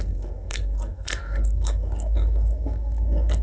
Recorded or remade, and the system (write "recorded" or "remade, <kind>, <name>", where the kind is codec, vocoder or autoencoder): remade, codec, SNAC